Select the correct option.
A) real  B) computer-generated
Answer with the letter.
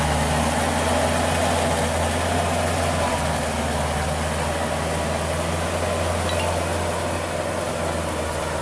A